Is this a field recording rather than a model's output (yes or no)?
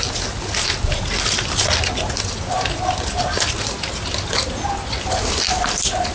yes